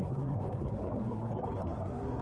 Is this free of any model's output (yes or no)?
no